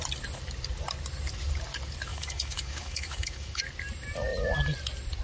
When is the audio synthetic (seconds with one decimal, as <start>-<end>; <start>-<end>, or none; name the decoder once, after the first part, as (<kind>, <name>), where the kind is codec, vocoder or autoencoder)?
2.1-3.6 (autoencoder, DAC-VAE)